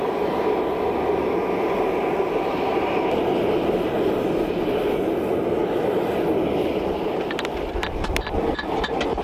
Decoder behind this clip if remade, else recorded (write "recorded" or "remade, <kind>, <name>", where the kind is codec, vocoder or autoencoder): recorded